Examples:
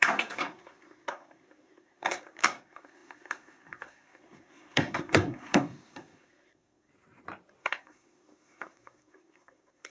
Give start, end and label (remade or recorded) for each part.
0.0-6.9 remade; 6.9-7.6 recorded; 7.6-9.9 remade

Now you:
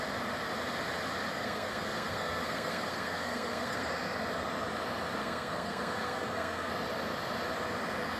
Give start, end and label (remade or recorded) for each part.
0.0-1.3 recorded; 1.3-3.9 remade; 3.9-5.2 recorded; 5.2-6.7 remade; 6.7-8.2 recorded

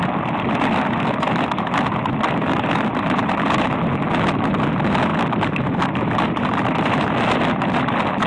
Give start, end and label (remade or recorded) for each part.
0.0-8.3 recorded

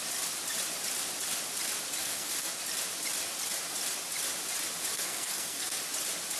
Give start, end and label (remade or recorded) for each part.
0.0-2.0 recorded; 2.0-2.6 remade; 2.6-4.9 recorded; 4.9-5.8 remade; 5.8-6.4 recorded

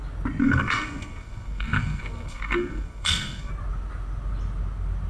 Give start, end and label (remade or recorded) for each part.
0.0-0.4 recorded; 0.4-3.5 remade; 3.5-5.1 recorded

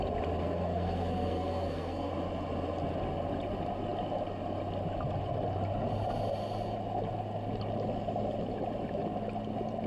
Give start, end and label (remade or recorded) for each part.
0.0-0.4 recorded; 0.4-2.1 remade; 2.1-9.9 recorded

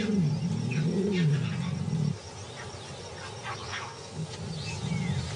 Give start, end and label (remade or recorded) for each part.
0.0-3.7 recorded; 3.7-4.3 remade; 4.3-5.4 recorded